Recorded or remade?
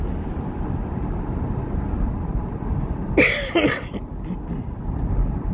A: recorded